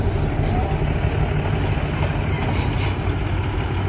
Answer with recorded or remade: recorded